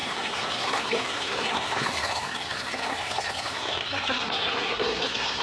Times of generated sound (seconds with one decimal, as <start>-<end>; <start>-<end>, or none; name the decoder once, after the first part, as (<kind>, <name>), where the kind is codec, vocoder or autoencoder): 0.0-5.4 (codec, SNAC)